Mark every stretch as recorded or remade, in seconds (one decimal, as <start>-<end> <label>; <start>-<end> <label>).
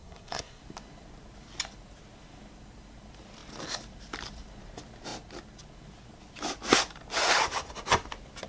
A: 0.0-0.6 remade; 0.6-8.5 recorded